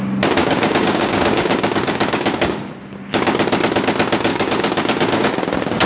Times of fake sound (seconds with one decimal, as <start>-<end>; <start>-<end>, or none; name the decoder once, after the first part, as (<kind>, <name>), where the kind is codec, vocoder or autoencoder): 0.4-2.7 (codec, DAC); 4.3-5.3